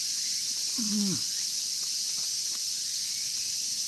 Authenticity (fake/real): fake